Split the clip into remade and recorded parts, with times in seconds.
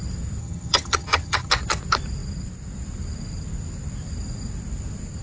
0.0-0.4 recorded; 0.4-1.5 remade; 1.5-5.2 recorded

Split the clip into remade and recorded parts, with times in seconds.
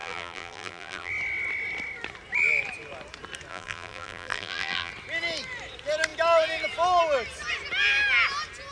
0.0-1.1 remade; 1.1-3.5 recorded; 3.5-4.9 remade; 4.9-8.7 recorded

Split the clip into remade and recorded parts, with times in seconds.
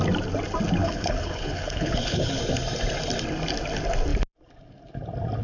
0.0-0.8 recorded; 0.8-2.4 remade; 2.4-5.4 recorded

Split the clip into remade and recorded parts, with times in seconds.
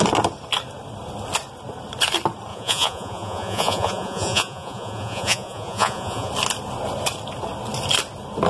0.0-2.5 recorded; 2.5-6.3 remade; 6.3-8.5 recorded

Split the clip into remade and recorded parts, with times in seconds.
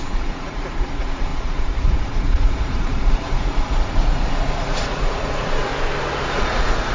0.0-5.7 remade; 5.7-6.3 recorded; 6.3-6.9 remade